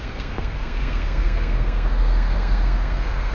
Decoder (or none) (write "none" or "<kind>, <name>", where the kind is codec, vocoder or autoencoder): codec, SNAC